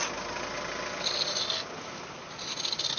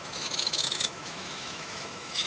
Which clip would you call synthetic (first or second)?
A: second